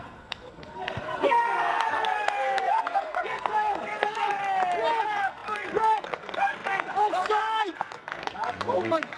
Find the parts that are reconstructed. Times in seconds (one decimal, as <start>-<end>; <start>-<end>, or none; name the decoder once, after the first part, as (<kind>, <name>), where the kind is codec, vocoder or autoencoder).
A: 0.0-4.4 (codec, SNAC); 4.9-9.2